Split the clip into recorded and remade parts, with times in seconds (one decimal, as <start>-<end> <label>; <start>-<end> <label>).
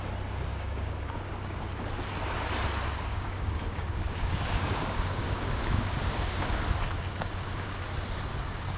0.0-0.5 recorded; 0.5-1.6 remade; 1.6-3.1 recorded; 3.1-6.6 remade; 6.6-8.8 recorded